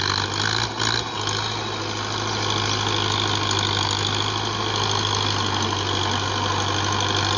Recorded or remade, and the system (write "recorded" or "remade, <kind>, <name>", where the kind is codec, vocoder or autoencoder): recorded